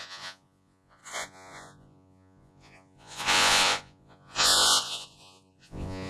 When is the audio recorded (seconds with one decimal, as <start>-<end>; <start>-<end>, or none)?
none